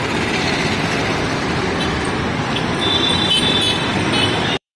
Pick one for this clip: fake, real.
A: fake